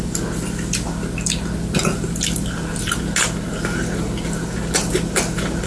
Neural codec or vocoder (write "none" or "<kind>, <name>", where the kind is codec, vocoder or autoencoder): none